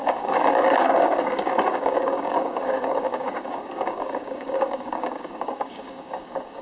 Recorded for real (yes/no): no